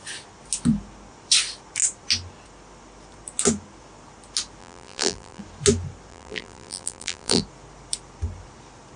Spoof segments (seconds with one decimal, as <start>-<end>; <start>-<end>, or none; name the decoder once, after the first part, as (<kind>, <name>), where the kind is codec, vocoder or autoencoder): 4.6-5.4 (vocoder, BigVGAN v2); 6.1-7.4